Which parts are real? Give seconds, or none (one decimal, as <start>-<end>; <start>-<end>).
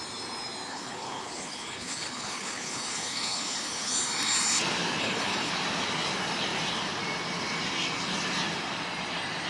0.0-0.7; 3.9-5.0; 5.5-9.5